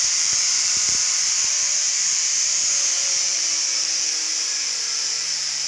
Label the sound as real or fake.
fake